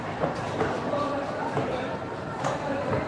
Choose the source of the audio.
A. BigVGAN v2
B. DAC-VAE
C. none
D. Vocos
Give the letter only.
A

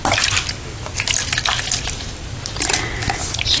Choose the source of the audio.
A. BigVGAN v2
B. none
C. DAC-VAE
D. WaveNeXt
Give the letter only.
B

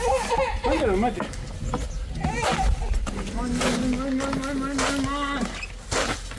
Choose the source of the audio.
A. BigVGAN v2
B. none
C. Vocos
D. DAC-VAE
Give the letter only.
B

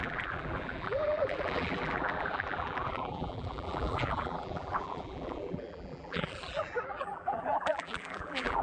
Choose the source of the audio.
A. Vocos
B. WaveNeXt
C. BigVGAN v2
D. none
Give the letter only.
C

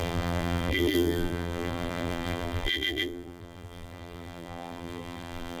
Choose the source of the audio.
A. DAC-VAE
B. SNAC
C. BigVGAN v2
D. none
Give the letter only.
C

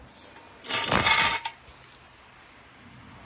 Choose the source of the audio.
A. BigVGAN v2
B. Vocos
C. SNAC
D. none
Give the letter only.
D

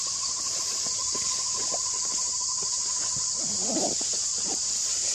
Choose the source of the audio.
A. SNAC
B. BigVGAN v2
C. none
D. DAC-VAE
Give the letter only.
C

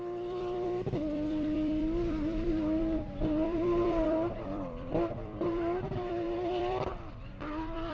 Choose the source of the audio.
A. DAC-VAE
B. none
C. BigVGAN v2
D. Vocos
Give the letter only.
C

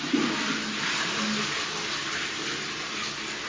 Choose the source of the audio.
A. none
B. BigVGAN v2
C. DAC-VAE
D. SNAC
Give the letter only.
A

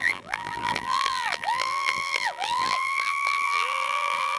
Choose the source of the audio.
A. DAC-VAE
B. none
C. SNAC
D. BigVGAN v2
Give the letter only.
D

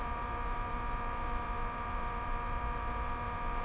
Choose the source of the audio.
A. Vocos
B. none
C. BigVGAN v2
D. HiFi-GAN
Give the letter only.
C